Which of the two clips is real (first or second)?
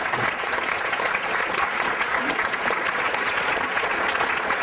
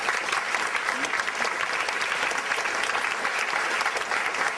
second